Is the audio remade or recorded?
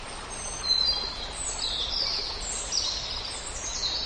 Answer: recorded